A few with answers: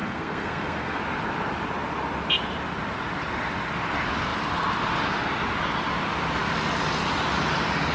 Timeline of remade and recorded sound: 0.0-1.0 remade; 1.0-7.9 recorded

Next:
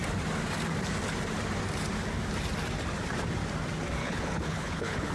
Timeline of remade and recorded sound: 0.0-4.0 recorded; 4.0-5.1 remade

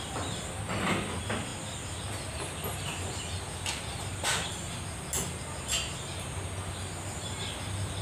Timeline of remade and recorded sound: 0.0-8.0 recorded

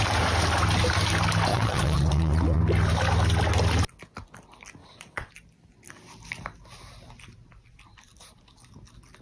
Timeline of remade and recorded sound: 0.0-1.5 recorded; 1.5-2.6 remade; 2.6-4.8 recorded; 4.8-5.3 remade; 5.3-9.2 recorded